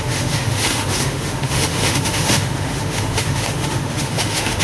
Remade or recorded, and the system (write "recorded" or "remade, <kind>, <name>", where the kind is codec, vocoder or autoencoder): remade, autoencoder, DAC-VAE